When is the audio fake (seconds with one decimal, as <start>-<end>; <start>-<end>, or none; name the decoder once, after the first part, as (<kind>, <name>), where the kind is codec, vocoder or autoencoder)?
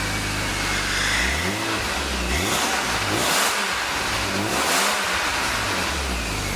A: none